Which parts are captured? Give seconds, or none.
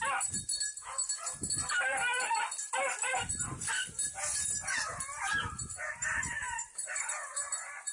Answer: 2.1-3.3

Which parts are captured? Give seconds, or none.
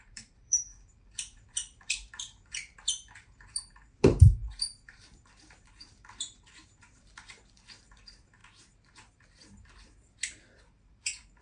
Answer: 8.4-10.6